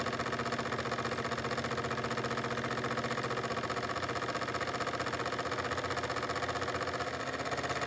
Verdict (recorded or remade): recorded